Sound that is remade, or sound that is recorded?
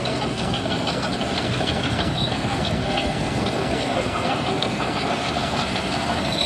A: remade